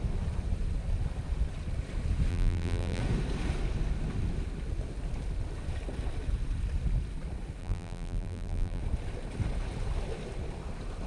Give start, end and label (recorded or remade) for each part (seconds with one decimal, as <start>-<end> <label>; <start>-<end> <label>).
0.0-2.3 recorded; 2.3-3.0 remade; 3.0-7.6 recorded; 7.6-8.8 remade; 8.8-11.1 recorded